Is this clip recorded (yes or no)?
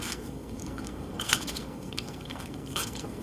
no